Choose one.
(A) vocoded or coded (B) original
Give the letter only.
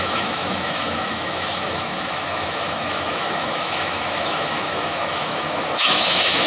A